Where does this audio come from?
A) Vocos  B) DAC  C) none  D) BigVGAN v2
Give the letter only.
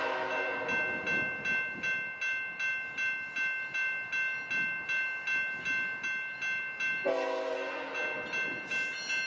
C